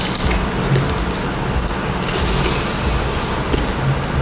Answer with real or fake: real